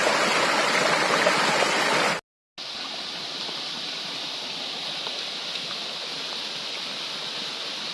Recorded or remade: recorded